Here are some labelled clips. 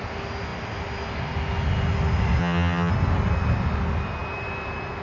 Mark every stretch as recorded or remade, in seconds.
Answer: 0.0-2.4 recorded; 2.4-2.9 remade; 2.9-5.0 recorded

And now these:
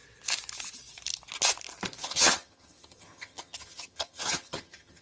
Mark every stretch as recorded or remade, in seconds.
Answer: 0.0-2.0 recorded; 2.0-5.0 remade

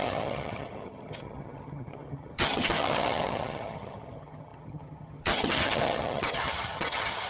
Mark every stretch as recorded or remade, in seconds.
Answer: 0.0-7.3 remade